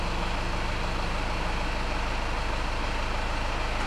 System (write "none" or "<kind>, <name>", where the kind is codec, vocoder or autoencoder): none